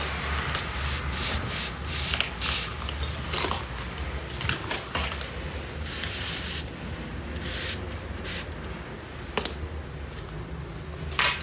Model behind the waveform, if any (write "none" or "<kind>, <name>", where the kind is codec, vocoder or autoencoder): none